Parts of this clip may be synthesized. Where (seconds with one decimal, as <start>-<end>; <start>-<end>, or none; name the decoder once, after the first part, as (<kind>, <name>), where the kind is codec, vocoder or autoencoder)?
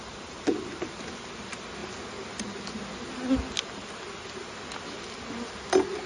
none